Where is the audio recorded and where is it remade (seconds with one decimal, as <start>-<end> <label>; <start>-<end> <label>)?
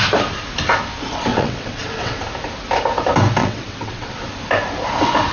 0.0-1.3 recorded; 1.3-2.1 remade; 2.1-3.4 recorded; 3.4-4.1 remade; 4.1-5.3 recorded